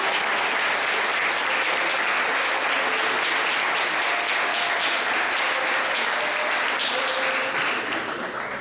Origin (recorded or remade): recorded